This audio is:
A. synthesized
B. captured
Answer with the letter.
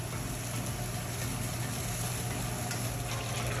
B